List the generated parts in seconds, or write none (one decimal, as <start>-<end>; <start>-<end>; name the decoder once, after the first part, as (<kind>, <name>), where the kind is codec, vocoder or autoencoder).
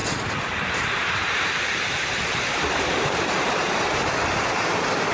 0.0-5.1 (vocoder, BigVGAN v2)